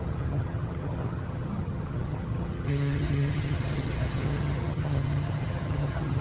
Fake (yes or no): yes